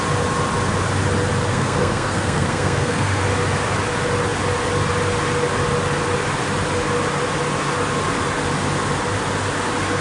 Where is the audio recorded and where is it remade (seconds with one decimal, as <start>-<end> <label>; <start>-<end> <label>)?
0.0-1.5 recorded; 1.5-3.2 remade; 3.2-10.0 recorded